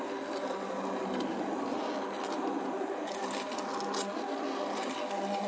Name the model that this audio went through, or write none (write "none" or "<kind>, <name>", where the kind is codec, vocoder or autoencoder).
none